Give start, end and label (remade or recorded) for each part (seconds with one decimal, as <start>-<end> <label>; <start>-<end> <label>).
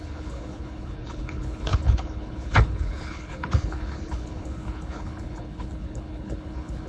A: 0.0-6.9 remade